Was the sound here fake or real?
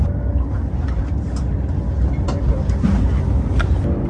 real